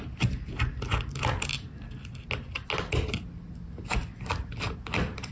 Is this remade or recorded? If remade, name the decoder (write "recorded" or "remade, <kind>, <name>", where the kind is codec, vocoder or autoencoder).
recorded